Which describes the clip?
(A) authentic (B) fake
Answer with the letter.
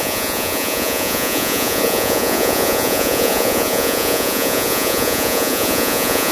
B